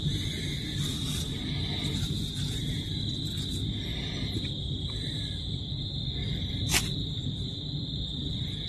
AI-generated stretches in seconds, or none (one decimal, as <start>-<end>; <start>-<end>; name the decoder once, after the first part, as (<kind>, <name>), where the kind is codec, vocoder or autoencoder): none